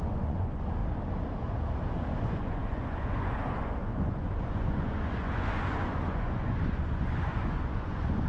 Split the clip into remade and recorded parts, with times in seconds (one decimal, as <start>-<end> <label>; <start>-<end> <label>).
0.0-0.8 remade; 0.8-2.1 recorded; 2.1-8.3 remade